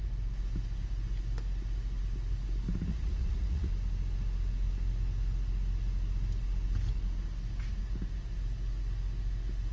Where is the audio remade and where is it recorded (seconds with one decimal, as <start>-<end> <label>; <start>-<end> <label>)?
0.0-2.9 recorded; 2.9-3.7 remade; 3.7-9.7 recorded